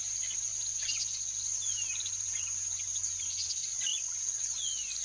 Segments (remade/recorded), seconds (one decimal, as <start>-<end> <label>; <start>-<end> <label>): 0.0-5.0 recorded